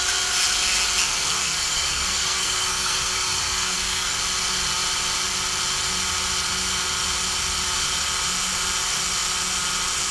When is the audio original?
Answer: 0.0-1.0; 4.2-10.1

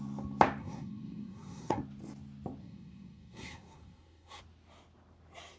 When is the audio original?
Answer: 0.0-0.6; 1.8-2.6; 4.4-5.6